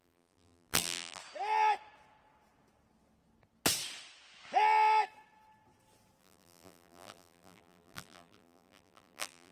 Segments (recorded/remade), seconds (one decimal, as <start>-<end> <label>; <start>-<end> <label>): 0.0-1.2 remade; 1.2-6.2 recorded; 6.2-9.5 remade